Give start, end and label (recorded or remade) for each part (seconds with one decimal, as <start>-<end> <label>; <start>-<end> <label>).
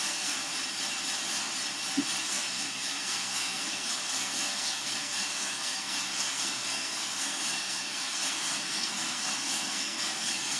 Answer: 0.0-0.5 remade; 0.5-2.2 recorded; 2.2-10.6 remade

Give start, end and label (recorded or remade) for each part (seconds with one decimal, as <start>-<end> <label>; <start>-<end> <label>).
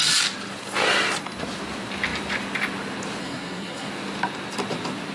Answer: 0.0-3.2 recorded; 3.2-3.9 remade; 3.9-5.1 recorded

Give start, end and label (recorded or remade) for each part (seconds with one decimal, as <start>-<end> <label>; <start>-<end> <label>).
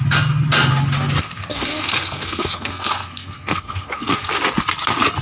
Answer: 0.0-1.2 recorded; 1.2-4.3 remade; 4.3-5.2 recorded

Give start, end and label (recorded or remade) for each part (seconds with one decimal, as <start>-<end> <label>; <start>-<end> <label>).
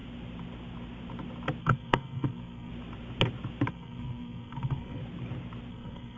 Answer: 0.0-1.6 recorded; 1.6-2.7 remade; 2.7-3.7 recorded; 3.7-5.0 remade; 5.0-5.7 recorded; 5.7-6.2 remade